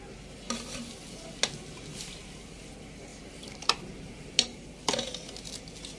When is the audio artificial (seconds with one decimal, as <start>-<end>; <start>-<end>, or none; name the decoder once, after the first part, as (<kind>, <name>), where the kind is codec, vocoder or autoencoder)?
3.1-4.3 (vocoder, BigVGAN v2)